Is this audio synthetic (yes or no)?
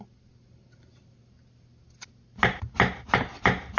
no